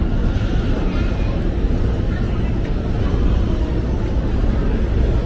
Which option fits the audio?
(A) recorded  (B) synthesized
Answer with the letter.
A